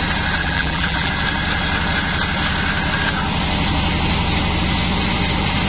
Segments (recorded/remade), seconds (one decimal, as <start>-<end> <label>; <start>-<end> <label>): 0.0-0.4 recorded; 0.4-1.1 remade; 1.1-5.7 recorded